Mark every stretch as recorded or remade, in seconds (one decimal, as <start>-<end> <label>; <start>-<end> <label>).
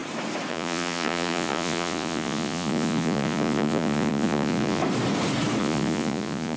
0.0-0.5 recorded; 0.5-4.8 remade; 4.8-5.6 recorded; 5.6-6.6 remade